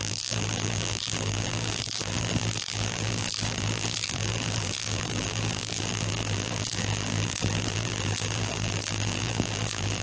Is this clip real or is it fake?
fake